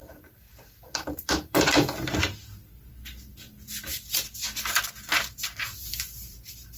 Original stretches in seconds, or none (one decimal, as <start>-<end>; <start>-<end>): 2.9-5.7